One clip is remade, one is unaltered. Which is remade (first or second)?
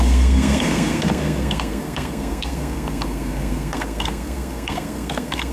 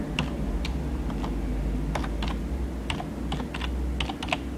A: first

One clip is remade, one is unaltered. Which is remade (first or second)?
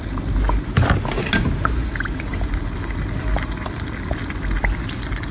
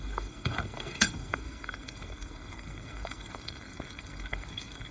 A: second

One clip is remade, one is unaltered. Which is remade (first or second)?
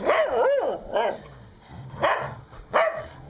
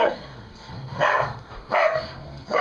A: second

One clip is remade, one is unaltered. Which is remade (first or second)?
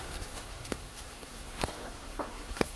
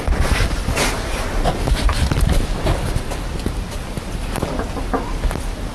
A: first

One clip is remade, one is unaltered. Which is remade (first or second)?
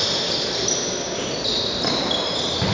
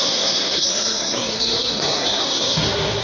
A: second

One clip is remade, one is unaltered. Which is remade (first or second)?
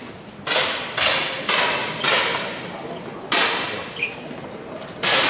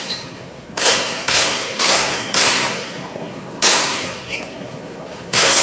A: second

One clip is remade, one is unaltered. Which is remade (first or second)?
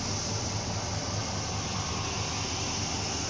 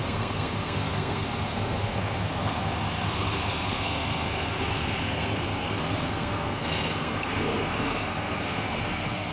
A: second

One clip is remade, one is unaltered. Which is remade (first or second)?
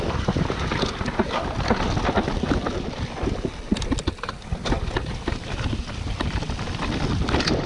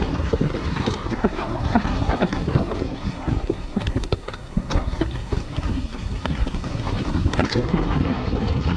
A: second